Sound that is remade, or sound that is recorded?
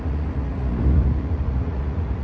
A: remade